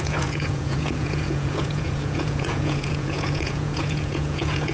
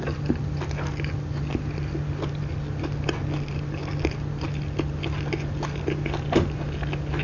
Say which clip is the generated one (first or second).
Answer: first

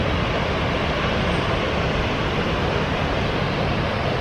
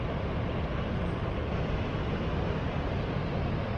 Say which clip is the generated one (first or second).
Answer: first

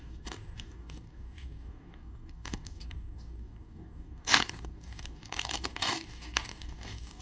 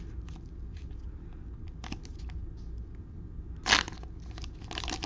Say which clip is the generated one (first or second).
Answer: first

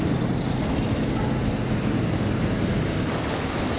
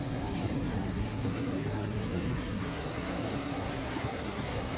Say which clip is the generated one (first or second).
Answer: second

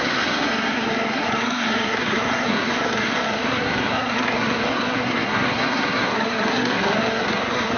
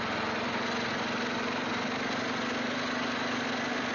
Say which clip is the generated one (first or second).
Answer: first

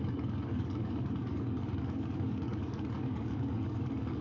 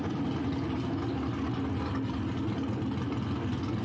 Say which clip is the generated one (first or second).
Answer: first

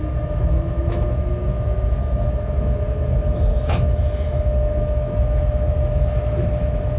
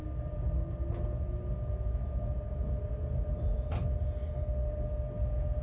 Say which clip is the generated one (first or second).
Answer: first